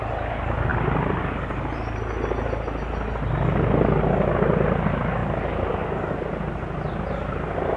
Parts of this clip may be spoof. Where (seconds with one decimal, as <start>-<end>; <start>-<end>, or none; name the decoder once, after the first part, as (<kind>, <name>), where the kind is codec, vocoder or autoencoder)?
none